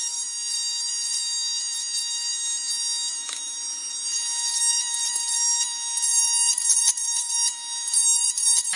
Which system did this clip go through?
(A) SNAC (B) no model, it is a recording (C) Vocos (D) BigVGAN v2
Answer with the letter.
B